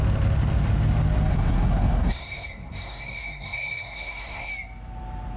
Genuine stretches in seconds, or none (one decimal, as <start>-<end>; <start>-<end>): 0.0-1.3; 4.5-5.4